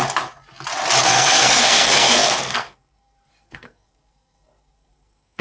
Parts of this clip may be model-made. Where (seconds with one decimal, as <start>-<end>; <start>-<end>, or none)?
1.0-5.4